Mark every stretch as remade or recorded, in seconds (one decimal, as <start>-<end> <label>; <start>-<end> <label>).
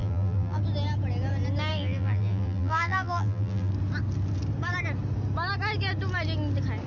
0.0-0.6 remade; 0.6-1.7 recorded; 1.7-3.7 remade; 3.7-6.9 recorded